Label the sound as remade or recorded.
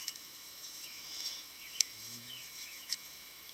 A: remade